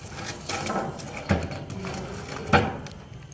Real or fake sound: real